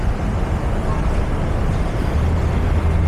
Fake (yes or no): no